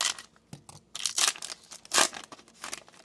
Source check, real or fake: real